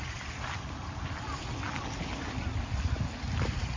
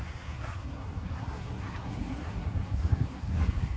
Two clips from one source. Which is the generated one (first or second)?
second